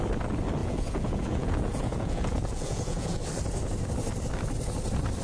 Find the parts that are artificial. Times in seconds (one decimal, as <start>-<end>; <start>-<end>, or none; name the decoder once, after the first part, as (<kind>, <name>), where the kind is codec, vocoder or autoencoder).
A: 0.6-3.2 (vocoder, Vocos)